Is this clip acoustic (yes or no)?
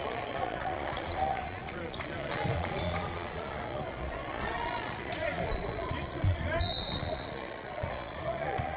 no